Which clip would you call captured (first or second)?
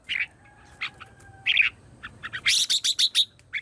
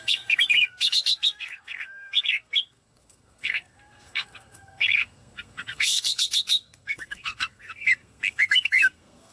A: first